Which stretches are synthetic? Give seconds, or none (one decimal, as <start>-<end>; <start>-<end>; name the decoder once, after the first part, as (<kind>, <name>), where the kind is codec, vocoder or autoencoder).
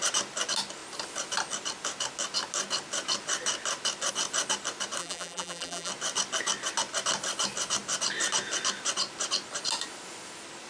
5.0-5.9 (vocoder, BigVGAN v2)